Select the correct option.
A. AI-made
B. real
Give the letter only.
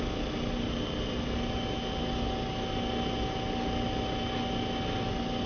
B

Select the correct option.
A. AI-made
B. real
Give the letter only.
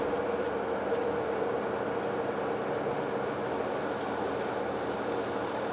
B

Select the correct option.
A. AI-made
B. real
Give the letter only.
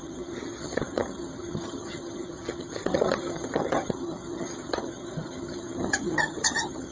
A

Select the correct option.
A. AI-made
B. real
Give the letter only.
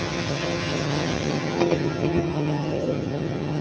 A